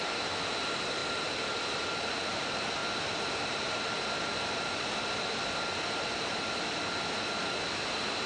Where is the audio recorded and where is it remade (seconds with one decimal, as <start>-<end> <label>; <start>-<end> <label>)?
0.0-1.0 remade; 1.0-2.1 recorded; 2.1-2.8 remade; 2.8-7.8 recorded; 7.8-8.3 remade